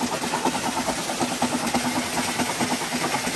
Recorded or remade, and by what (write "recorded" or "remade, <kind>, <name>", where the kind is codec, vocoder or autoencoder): recorded